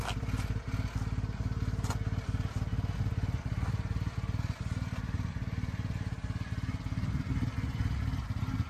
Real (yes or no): yes